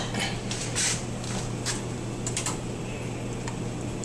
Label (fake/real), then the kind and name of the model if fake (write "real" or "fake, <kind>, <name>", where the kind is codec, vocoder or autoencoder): real